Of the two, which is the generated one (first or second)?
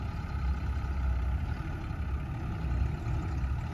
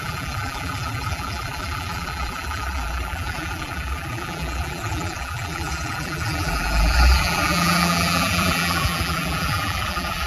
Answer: second